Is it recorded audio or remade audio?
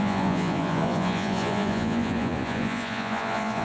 remade